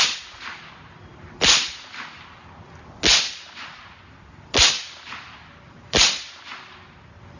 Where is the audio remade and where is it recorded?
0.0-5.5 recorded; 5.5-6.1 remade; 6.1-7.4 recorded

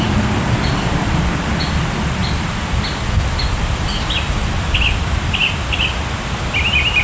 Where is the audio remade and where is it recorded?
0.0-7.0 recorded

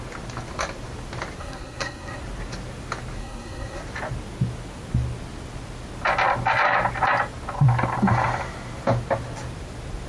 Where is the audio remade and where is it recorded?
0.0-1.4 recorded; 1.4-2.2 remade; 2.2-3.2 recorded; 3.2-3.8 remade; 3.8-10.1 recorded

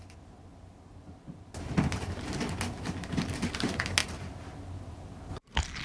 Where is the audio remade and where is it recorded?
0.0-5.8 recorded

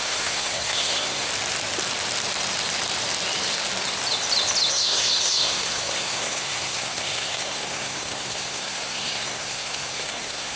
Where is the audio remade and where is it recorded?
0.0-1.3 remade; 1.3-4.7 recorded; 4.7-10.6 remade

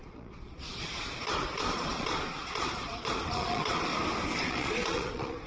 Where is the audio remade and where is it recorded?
0.0-3.9 remade; 3.9-4.5 recorded; 4.5-5.5 remade